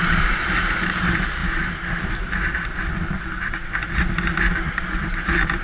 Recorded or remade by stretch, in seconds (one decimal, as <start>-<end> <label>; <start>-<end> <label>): 0.0-1.4 remade; 1.4-4.8 recorded; 4.8-5.6 remade